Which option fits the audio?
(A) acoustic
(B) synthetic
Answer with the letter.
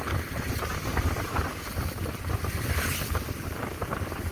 A